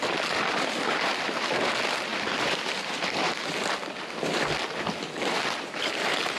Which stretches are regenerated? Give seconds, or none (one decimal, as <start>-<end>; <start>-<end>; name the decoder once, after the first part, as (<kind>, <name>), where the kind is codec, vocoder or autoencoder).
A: 2.1-3.3 (vocoder, BigVGAN v2)